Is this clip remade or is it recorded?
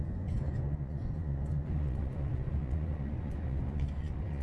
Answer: remade